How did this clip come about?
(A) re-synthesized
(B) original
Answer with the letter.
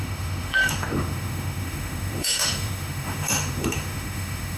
A